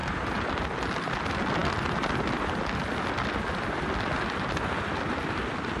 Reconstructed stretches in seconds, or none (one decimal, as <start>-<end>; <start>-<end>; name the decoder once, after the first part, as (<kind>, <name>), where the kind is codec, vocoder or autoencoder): 0.0-0.5 (vocoder, BigVGAN v2)